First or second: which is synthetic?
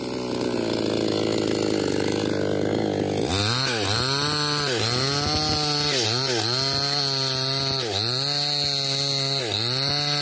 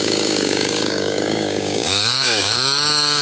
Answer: second